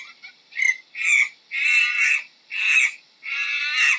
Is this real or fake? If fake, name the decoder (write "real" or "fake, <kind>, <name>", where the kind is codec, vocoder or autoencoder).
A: real